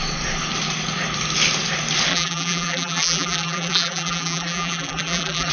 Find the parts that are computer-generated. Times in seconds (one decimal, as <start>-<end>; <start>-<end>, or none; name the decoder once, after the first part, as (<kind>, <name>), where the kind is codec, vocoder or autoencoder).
2.1-5.5 (vocoder, BigVGAN v2)